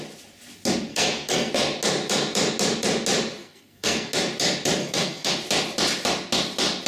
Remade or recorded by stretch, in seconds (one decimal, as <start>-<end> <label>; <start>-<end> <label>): 0.0-0.9 recorded; 0.9-1.5 remade; 1.5-3.4 recorded; 3.4-4.1 remade; 4.1-4.8 recorded; 4.8-5.3 remade; 5.3-6.9 recorded